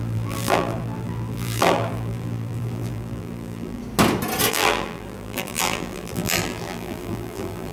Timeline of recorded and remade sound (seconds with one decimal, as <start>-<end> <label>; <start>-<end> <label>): 0.0-3.8 remade; 3.8-4.5 recorded; 4.5-7.7 remade